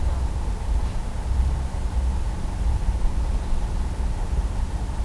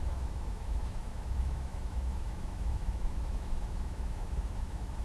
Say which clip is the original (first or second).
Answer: first